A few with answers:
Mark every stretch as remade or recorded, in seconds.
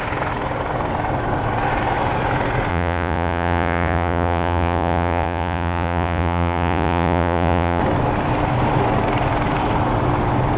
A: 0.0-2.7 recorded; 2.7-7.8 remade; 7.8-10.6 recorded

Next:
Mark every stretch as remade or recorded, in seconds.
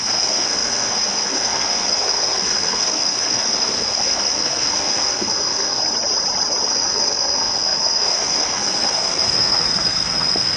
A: 0.0-5.8 remade; 5.8-6.7 recorded; 6.7-10.6 remade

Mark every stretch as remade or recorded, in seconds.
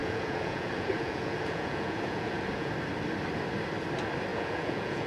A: 0.0-2.7 remade; 2.7-4.3 recorded; 4.3-5.1 remade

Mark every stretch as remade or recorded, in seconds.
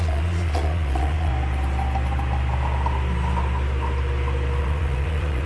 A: 0.0-1.3 remade; 1.3-4.6 recorded; 4.6-5.5 remade